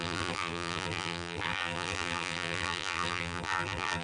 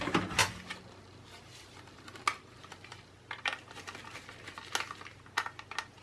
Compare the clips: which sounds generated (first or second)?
first